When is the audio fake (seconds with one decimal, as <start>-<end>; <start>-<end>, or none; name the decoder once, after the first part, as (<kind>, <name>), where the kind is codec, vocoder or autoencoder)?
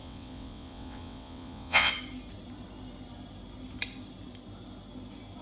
0.0-1.9 (vocoder, WaveNeXt)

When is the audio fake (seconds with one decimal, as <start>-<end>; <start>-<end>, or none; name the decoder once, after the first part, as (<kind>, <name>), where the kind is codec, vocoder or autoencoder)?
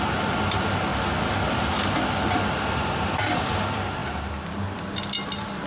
none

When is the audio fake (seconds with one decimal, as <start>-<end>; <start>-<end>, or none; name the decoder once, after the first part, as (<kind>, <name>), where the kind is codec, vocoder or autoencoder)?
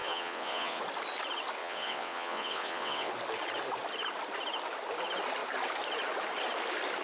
0.0-0.8 (vocoder, WaveNeXt); 1.6-3.1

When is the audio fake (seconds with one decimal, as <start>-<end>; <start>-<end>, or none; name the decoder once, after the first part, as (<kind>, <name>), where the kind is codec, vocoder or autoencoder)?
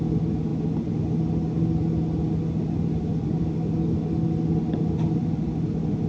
none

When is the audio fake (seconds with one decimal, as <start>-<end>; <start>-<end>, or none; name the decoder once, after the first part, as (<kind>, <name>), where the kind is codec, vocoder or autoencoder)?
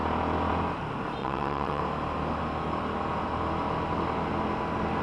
1.2-1.8 (vocoder, WaveNeXt)